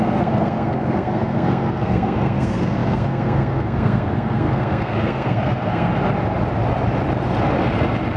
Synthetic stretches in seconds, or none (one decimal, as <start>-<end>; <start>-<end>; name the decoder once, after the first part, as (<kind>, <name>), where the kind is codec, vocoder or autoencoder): 0.0-5.9 (codec, SNAC)

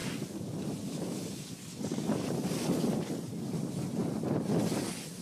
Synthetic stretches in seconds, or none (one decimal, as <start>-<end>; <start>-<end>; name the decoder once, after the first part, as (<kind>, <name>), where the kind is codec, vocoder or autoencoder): 0.0-3.1 (vocoder, BigVGAN v2)

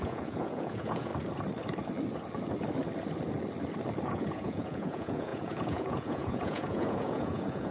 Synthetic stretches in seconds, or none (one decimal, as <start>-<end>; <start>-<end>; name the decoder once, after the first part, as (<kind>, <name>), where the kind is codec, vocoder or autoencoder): 0.0-1.1 (vocoder, Vocos); 4.1-7.7